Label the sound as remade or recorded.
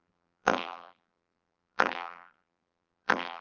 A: remade